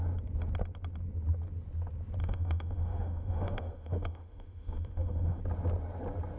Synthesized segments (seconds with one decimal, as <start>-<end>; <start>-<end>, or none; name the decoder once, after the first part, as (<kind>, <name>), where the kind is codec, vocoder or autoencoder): 2.2-5.4 (autoencoder, DAC-VAE)